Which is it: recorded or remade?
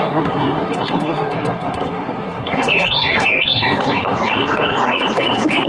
remade